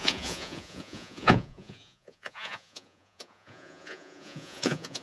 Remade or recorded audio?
remade